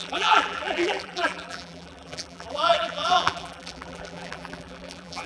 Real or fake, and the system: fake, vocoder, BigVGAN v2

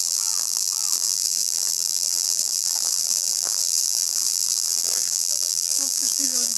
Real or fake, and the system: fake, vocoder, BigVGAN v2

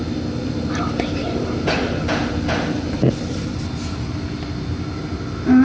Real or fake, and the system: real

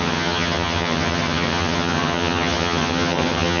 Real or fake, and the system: fake, vocoder, HiFi-GAN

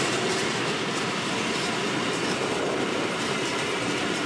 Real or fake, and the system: fake, vocoder, BigVGAN v2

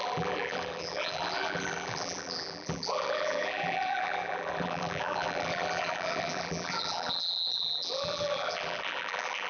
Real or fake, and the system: fake, vocoder, BigVGAN v2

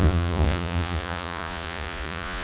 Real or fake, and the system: fake, vocoder, Vocos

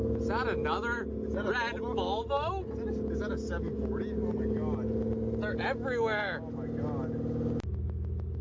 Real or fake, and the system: real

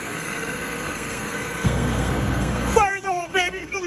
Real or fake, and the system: fake, codec, SNAC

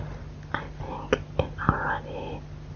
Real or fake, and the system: real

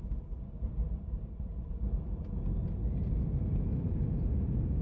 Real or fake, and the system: real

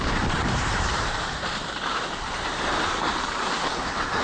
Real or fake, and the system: fake, vocoder, BigVGAN v2